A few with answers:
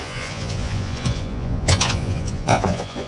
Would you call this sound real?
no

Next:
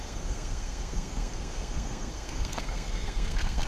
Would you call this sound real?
no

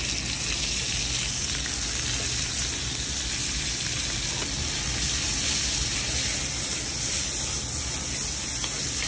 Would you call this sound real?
yes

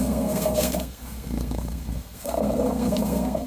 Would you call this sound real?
no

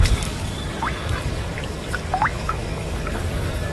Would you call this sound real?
no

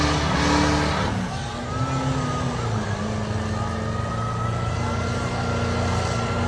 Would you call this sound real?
yes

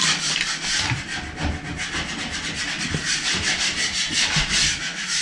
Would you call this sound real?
yes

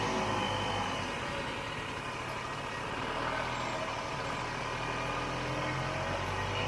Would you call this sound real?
yes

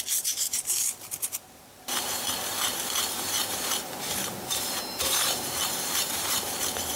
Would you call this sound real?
no